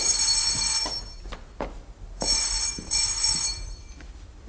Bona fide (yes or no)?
no